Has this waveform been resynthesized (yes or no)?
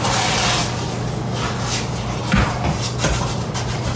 no